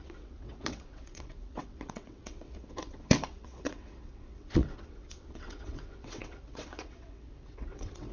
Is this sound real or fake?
fake